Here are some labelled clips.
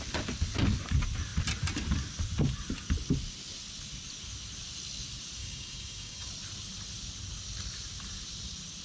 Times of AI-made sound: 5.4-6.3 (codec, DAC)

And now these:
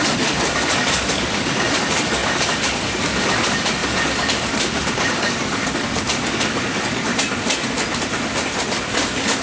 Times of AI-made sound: 0.0-7.1 (codec, DAC); 8.7-9.4

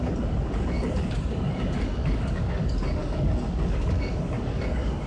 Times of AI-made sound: 0.0-5.1 (codec, DAC)

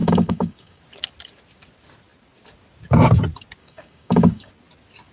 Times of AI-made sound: 0.0-0.8 (codec, DAC); 3.6-4.5

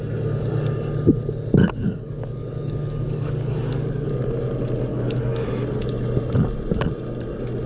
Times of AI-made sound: 1.6-4.1 (codec, DAC); 4.9-5.5

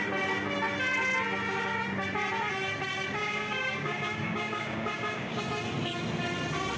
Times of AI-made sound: 3.2-5.4 (codec, DAC)

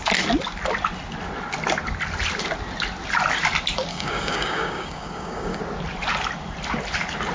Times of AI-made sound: 3.9-5.6 (codec, DAC)

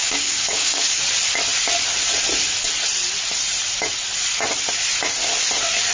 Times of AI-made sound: 0.0-1.0 (codec, DAC)